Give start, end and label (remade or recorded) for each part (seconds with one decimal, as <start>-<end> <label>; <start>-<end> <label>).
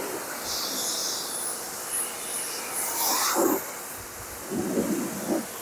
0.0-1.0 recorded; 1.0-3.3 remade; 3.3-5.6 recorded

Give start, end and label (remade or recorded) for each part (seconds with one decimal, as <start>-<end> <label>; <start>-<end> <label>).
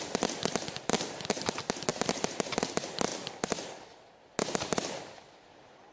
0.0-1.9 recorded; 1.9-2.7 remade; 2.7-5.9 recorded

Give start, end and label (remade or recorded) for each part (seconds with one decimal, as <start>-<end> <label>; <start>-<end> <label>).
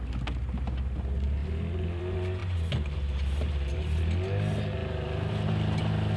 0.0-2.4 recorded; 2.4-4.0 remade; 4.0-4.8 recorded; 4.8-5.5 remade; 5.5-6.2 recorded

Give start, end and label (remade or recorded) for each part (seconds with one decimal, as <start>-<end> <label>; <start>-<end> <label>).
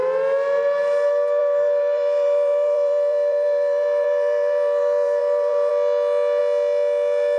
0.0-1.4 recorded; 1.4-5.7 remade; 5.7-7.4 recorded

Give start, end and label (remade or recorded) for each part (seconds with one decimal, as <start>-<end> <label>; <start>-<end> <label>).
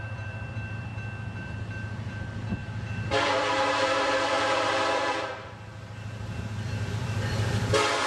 0.0-0.9 remade; 0.9-1.4 recorded; 1.4-8.1 remade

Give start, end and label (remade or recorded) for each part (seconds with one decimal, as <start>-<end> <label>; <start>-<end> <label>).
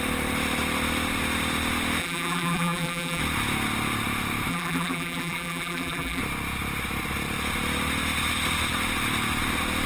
0.0-2.0 recorded; 2.0-3.2 remade; 3.2-4.5 recorded; 4.5-6.2 remade; 6.2-9.9 recorded